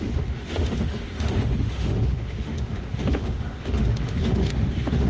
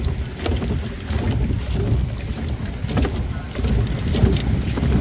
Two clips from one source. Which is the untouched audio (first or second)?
second